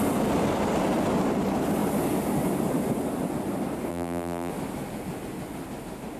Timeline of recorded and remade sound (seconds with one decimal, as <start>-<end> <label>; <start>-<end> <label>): 0.0-3.9 recorded; 3.9-4.5 remade; 4.5-6.2 recorded